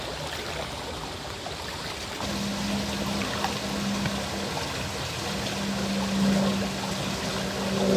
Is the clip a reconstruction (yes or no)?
no